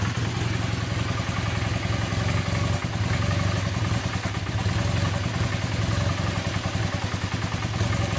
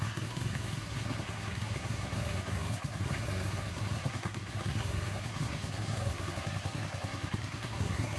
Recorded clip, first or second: first